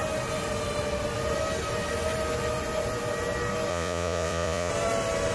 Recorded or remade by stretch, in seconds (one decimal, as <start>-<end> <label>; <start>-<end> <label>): 0.0-3.7 recorded; 3.7-4.7 remade; 4.7-5.3 recorded